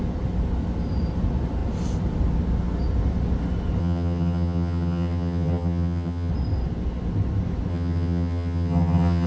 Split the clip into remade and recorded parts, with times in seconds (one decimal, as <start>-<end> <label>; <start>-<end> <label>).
0.0-3.8 recorded; 3.8-6.3 remade; 6.3-7.7 recorded; 7.7-9.3 remade